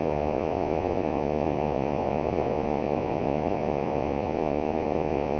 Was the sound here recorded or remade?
remade